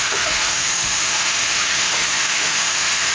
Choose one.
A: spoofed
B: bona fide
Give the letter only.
A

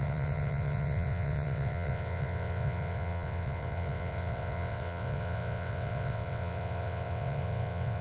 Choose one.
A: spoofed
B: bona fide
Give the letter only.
A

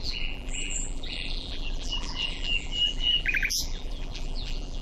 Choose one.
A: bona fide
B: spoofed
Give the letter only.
B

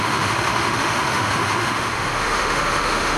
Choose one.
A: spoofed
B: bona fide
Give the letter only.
A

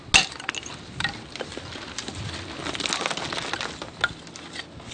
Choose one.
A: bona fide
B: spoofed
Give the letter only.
A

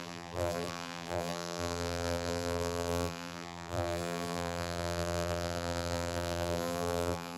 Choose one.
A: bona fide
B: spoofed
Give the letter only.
B